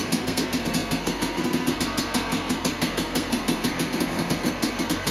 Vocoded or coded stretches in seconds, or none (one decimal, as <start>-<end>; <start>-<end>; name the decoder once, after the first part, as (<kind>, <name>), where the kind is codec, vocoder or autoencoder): 0.0-5.1 (codec, SNAC)